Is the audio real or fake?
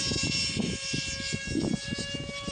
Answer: real